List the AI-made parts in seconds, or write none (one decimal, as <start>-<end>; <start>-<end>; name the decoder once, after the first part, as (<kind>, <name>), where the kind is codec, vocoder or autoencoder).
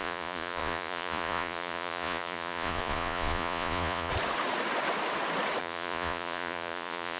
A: 0.0-4.1 (vocoder, Vocos); 5.6-7.2